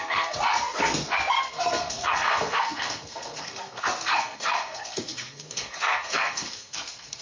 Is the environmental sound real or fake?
fake